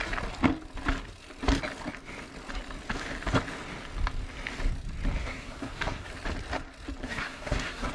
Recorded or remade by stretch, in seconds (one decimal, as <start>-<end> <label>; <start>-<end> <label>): 0.0-5.2 recorded; 5.2-6.1 remade; 6.1-7.0 recorded; 7.0-7.9 remade